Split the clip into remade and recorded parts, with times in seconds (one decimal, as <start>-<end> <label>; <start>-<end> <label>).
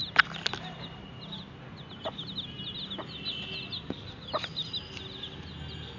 0.0-6.0 recorded